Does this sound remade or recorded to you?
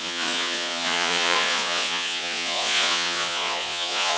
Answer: remade